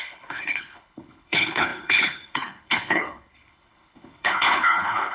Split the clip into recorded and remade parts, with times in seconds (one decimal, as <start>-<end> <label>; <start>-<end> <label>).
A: 0.0-5.1 remade